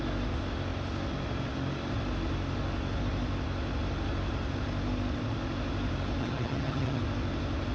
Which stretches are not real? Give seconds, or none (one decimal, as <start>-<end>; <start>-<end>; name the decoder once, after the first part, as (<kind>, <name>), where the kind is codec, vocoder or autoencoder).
6.2-7.0 (vocoder, HiFi-GAN)